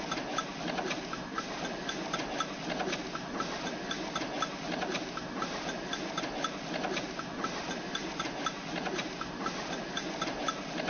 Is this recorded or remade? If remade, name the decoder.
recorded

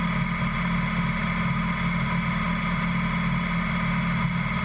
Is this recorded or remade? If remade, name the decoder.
recorded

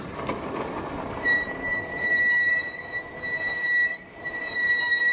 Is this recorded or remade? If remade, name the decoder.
recorded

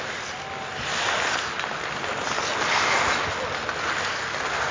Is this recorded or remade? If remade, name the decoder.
recorded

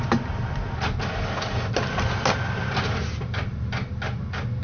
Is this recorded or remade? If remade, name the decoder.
recorded